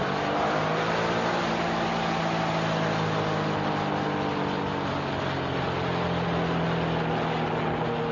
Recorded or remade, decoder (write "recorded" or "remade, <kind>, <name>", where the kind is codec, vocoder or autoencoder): recorded